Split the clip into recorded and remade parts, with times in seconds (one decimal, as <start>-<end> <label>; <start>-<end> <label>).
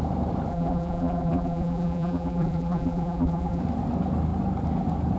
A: 0.0-0.5 recorded; 0.5-3.6 remade; 3.6-5.2 recorded